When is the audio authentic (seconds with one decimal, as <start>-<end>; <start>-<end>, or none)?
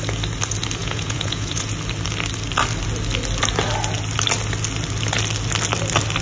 0.0-0.8; 1.7-6.2